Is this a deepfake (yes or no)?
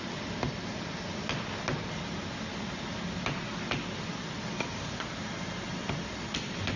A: no